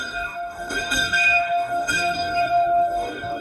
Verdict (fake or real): fake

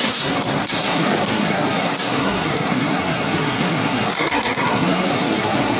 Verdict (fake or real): fake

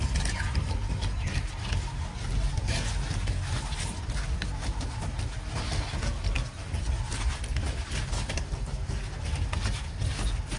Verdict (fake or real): real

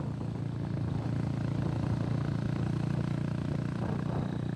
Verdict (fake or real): real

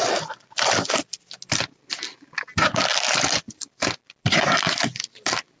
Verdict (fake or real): real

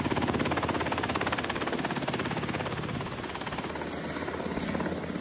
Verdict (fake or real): real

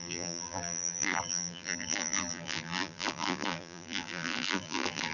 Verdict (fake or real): fake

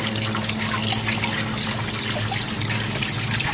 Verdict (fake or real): real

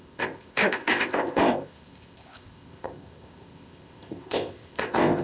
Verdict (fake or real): fake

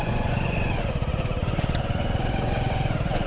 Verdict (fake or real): fake